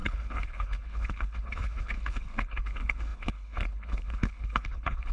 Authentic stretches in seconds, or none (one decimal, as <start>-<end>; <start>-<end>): none